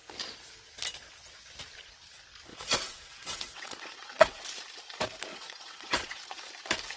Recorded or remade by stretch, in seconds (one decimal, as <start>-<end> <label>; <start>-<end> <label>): 0.0-2.5 recorded; 2.5-4.4 remade; 4.4-5.3 recorded; 5.3-6.2 remade; 6.2-7.0 recorded